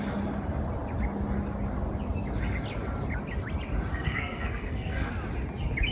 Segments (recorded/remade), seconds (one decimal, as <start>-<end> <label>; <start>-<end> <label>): 0.0-3.9 recorded; 3.9-5.1 remade; 5.1-5.9 recorded